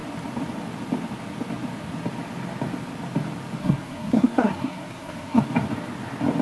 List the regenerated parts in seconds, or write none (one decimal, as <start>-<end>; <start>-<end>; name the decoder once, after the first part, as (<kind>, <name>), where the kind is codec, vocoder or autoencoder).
3.6-5.4 (codec, SNAC)